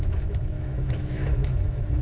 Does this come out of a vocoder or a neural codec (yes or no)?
yes